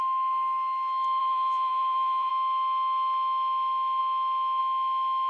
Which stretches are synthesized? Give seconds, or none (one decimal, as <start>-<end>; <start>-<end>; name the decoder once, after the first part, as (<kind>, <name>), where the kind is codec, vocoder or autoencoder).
1.2-2.3 (vocoder, BigVGAN v2)